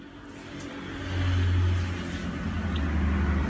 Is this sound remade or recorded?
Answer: recorded